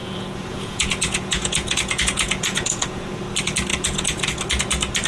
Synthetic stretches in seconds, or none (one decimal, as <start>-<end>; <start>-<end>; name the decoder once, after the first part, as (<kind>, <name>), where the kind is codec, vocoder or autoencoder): 0.0-3.1 (vocoder, Vocos); 3.7-4.3